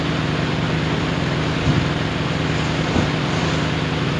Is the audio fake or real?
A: real